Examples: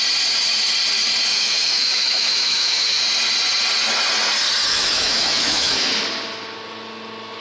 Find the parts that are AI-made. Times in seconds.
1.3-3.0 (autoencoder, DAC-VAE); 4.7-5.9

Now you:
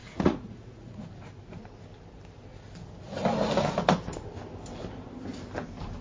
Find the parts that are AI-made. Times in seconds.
0.0-1.0 (vocoder, Vocos)

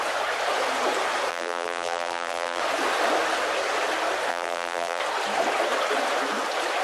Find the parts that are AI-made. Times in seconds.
1.3-2.6 (vocoder, BigVGAN v2); 4.3-5.0